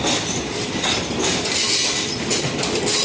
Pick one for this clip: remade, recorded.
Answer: recorded